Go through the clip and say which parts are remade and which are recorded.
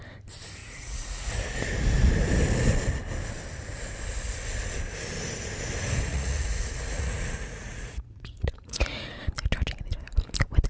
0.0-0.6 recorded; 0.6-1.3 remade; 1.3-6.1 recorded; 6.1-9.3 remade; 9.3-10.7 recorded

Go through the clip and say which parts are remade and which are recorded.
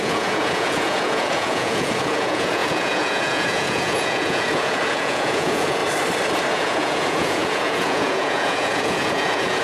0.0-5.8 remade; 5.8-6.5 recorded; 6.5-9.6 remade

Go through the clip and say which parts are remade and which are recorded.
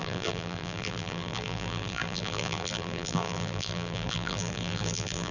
0.0-5.3 remade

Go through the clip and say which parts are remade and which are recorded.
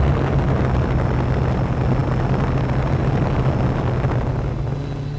0.0-5.2 recorded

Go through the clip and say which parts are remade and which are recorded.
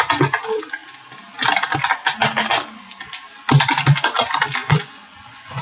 0.0-4.6 recorded; 4.6-5.6 remade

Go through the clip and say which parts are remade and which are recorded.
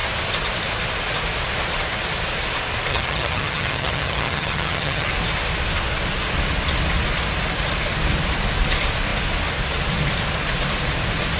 0.0-2.9 recorded; 2.9-5.1 remade; 5.1-11.4 recorded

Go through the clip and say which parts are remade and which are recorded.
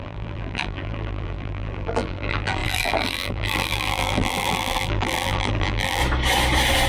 0.0-6.0 remade; 6.0-6.9 recorded